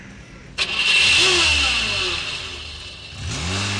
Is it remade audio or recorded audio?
recorded